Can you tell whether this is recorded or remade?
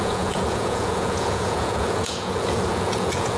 remade